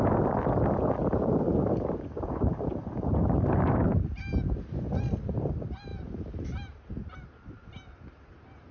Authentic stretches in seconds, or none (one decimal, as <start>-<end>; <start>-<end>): 0.0-1.0; 4.3-5.9; 7.3-8.7